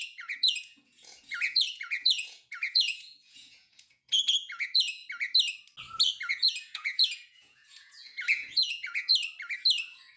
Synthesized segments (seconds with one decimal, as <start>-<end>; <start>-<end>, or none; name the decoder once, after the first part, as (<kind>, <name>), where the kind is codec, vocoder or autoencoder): 0.0-5.0 (vocoder, Vocos); 6.3-9.1